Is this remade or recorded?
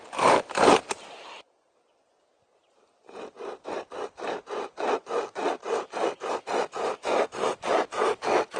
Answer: remade